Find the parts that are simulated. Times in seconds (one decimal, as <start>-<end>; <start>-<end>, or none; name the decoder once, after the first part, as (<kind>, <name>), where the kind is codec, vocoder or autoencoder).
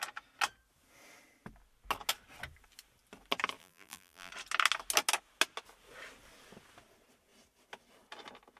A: 3.6-4.3 (vocoder, BigVGAN v2)